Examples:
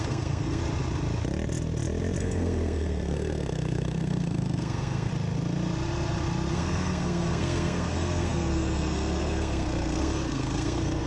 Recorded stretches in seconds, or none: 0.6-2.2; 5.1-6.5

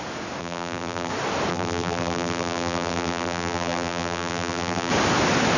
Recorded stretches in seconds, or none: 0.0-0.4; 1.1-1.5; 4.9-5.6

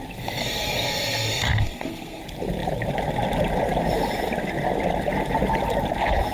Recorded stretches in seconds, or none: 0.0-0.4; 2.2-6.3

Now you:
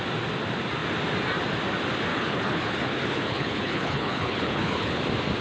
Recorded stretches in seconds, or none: 0.0-2.1; 5.0-5.4

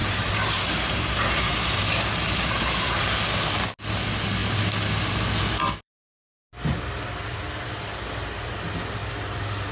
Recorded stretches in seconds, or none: 3.1-9.0